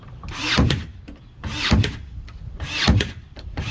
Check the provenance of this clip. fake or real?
fake